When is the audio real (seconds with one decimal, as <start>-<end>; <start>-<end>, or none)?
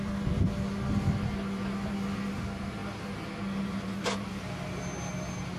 0.0-5.6